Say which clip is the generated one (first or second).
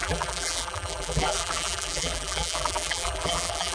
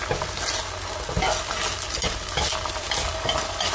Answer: first